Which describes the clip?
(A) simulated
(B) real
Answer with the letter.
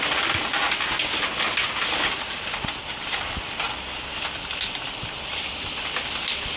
B